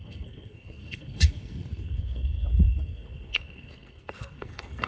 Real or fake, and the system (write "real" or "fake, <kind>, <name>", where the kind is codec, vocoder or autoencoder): fake, codec, SNAC